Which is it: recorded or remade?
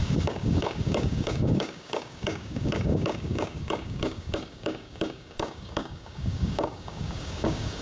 remade